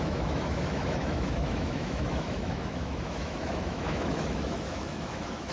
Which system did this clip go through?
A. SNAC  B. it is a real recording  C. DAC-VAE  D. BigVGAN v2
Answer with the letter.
C